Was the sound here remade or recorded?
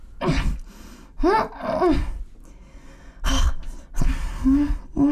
recorded